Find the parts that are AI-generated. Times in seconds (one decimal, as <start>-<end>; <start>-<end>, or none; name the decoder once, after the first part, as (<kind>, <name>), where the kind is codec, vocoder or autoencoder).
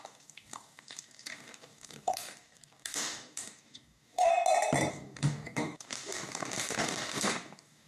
0.0-4.3 (codec, DAC); 4.9-7.9